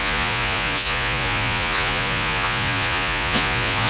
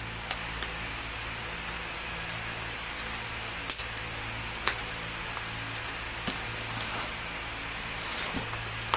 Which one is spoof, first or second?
first